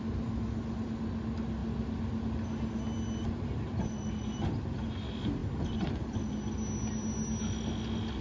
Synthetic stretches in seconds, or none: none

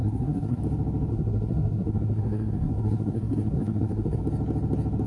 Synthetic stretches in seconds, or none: 0.0-0.6 (codec, SNAC); 1.1-4.2

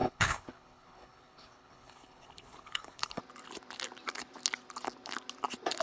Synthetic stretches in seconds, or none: 0.0-3.2 (codec, HILCodec)